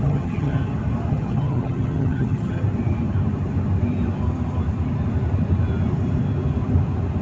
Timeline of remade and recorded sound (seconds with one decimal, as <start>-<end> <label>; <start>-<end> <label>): 0.0-0.6 remade; 0.6-1.1 recorded; 1.1-2.6 remade; 2.6-7.2 recorded